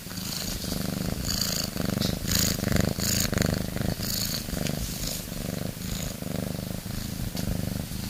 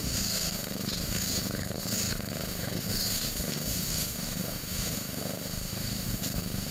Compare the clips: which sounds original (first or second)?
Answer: first